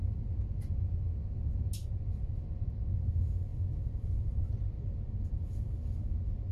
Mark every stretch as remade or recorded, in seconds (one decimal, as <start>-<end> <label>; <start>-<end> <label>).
0.0-1.8 recorded; 1.8-2.3 remade; 2.3-3.5 recorded; 3.5-4.6 remade; 4.6-6.5 recorded